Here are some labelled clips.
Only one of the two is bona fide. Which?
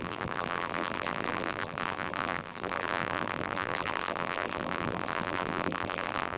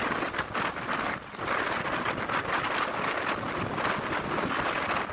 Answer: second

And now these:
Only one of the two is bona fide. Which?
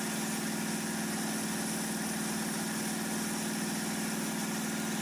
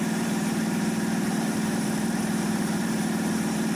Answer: first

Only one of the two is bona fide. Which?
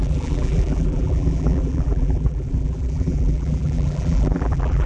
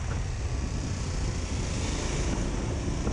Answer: second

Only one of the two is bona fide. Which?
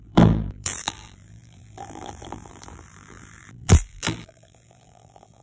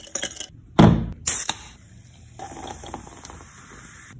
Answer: second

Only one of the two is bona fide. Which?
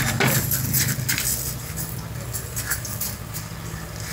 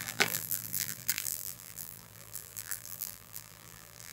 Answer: first